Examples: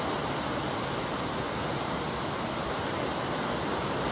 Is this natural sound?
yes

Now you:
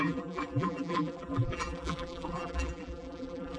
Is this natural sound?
no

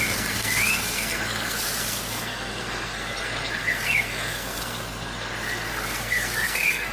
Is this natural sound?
no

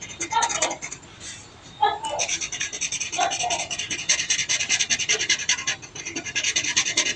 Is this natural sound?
yes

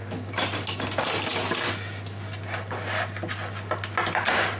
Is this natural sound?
yes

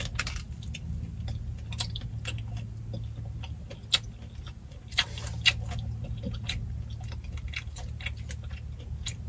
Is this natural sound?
yes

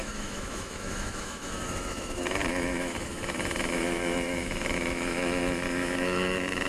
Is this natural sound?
no